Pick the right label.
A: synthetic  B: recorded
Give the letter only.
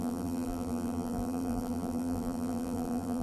A